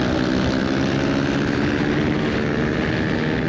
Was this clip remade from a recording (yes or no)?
no